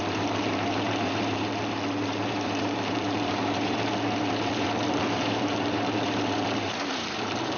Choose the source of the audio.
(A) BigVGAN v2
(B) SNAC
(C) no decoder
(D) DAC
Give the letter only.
A